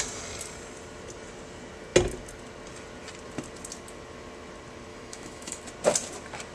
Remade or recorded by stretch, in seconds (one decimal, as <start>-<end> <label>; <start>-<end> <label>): 0.0-4.9 recorded; 4.9-5.6 remade; 5.6-6.5 recorded